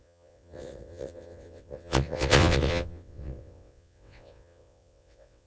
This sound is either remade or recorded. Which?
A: remade